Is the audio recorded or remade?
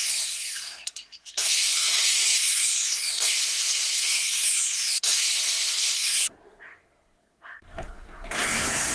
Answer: remade